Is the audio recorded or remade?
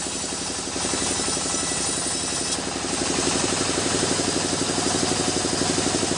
recorded